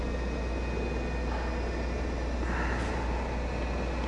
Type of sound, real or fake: real